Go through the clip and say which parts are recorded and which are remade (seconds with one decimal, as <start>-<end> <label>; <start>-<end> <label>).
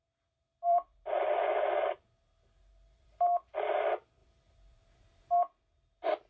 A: 0.0-1.5 remade; 1.5-2.7 recorded; 2.7-6.3 remade